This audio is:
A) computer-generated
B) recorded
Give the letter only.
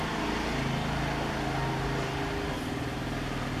B